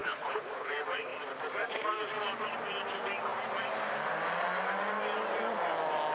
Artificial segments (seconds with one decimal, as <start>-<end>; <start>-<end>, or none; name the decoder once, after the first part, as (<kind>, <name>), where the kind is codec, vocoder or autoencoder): 0.0-0.7 (codec, HILCodec)